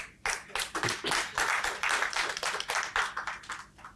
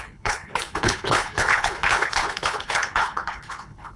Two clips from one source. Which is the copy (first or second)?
second